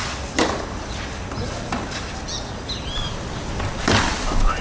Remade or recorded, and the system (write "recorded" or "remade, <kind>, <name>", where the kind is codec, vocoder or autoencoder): recorded